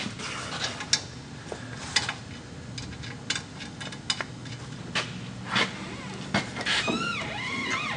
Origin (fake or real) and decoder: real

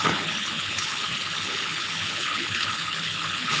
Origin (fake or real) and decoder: fake, codec, HILCodec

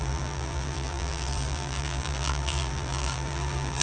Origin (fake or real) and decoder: fake, vocoder, BigVGAN v2